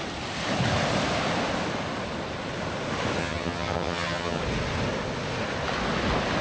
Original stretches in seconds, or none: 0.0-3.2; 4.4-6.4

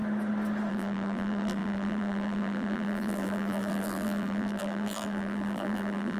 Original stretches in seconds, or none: 0.0-0.7

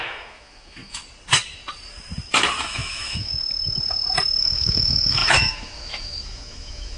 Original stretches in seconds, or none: 1.0-2.6; 3.3-4.4

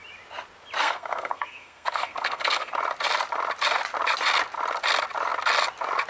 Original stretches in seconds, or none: 0.0-0.8; 2.7-6.1

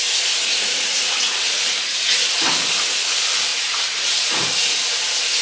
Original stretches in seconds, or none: 0.0-0.5; 2.3-3.5; 4.4-5.4

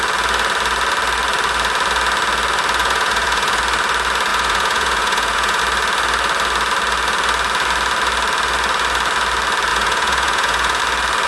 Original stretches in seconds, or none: 0.0-2.8; 3.6-4.3; 5.6-9.7; 10.8-11.3

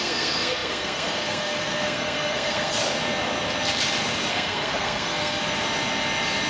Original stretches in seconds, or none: 2.8-4.3; 5.4-6.5